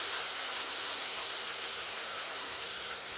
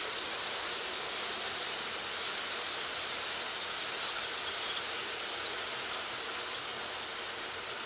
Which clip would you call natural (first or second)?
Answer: second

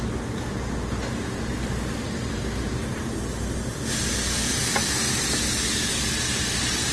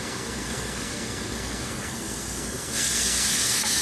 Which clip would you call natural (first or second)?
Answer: first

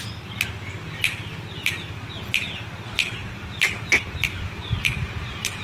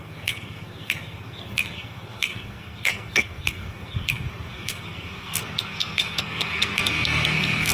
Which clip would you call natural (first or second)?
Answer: first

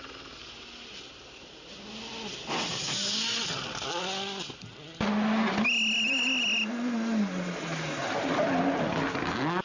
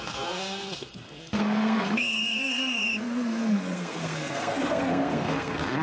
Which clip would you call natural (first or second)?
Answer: first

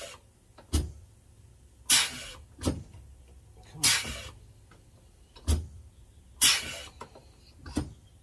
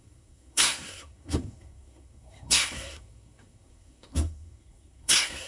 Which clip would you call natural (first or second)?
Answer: first